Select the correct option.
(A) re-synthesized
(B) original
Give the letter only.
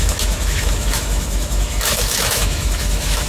A